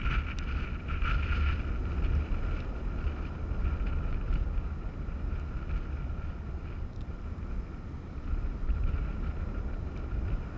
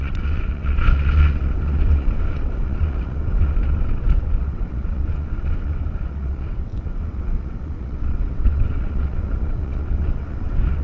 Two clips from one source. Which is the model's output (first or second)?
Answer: second